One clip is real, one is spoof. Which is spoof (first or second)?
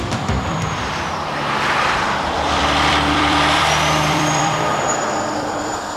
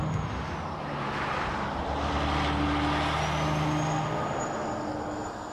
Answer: first